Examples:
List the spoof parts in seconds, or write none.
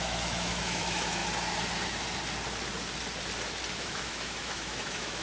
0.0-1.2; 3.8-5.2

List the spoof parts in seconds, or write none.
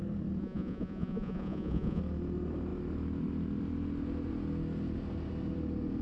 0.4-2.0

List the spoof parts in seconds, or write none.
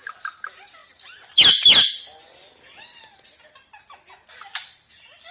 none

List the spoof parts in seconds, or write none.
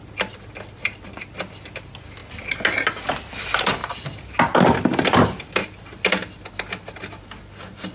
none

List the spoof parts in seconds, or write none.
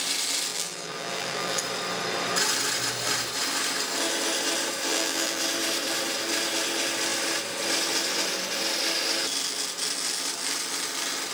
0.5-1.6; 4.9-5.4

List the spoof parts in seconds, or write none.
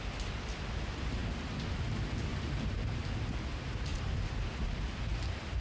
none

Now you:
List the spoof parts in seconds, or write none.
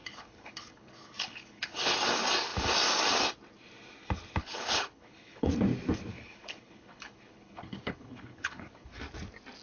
0.0-1.9; 4.4-5.5; 6.1-9.0